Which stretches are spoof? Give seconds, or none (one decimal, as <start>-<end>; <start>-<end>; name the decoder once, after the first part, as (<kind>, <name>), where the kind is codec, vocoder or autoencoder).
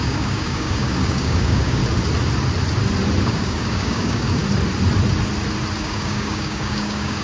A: 0.0-1.8 (codec, DAC); 3.2-4.4; 5.8-7.2